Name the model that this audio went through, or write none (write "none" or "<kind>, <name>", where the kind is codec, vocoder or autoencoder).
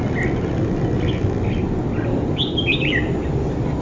none